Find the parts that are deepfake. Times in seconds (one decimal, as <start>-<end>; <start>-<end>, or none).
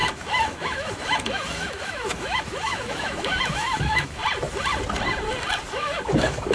0.0-4.2; 5.7-6.5